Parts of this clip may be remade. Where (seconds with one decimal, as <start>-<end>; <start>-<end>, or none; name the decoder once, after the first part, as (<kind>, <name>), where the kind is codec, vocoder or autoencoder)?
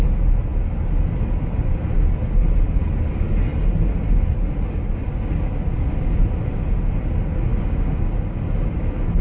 7.5-8.4 (codec, DAC)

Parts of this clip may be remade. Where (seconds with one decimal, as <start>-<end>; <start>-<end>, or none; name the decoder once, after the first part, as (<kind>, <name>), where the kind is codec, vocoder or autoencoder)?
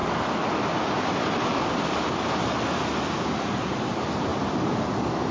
none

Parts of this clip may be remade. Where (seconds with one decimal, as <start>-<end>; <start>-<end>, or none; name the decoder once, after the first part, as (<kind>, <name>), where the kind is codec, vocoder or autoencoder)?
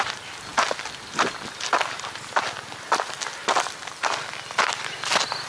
none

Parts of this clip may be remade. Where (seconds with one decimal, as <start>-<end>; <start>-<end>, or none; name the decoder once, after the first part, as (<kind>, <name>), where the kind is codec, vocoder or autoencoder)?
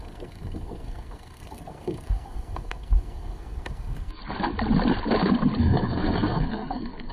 0.0-4.2 (codec, SNAC); 5.6-7.1